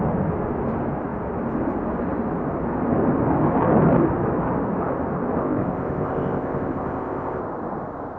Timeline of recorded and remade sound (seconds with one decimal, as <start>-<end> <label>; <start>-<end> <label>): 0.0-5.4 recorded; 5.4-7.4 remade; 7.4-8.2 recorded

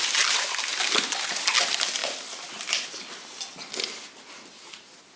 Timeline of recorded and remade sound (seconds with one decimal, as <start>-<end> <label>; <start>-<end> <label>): 0.0-5.2 recorded

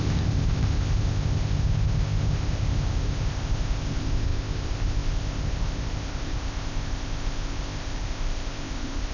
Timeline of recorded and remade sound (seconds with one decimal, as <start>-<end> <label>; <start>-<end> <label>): 0.0-9.1 remade